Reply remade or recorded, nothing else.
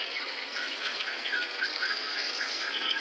remade